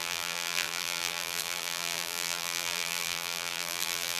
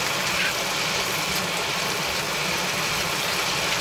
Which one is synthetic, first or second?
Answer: first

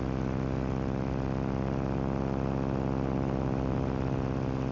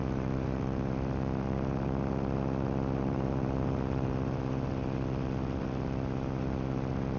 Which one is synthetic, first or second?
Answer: second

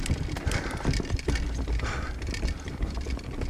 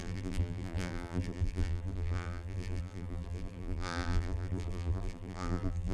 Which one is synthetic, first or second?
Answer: second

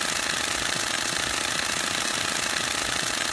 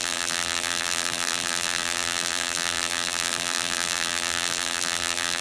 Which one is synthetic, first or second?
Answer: second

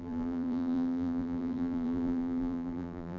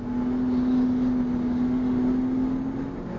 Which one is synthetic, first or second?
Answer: first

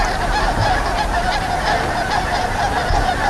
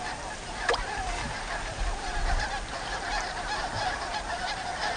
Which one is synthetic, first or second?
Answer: second